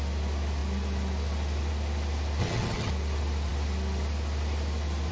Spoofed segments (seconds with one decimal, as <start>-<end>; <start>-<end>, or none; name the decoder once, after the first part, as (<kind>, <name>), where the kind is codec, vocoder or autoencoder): 2.4-2.9 (vocoder, HiFi-GAN)